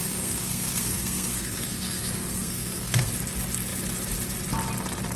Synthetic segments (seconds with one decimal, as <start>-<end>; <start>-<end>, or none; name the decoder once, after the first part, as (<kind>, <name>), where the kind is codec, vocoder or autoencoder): 0.0-3.1 (codec, SNAC)